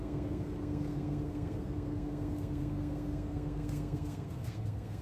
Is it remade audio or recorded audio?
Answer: remade